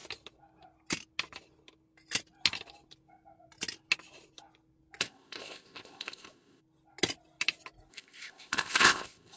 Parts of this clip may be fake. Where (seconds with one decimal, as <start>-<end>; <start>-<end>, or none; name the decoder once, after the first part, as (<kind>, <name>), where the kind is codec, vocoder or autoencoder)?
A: 5.0-6.6 (codec, ZipCodec); 7.9-9.4